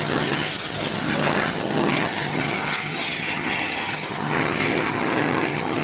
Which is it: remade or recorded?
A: remade